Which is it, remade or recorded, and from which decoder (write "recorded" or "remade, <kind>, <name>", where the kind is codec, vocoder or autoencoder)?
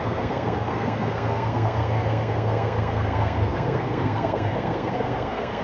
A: remade, codec, SNAC